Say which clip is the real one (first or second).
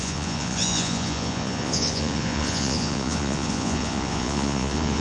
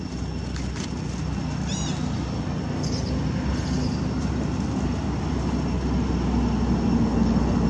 second